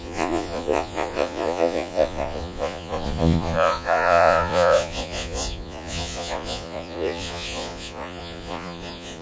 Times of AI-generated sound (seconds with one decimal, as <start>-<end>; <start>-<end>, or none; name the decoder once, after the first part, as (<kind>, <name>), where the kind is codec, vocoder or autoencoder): 0.0-9.2 (vocoder, Vocos)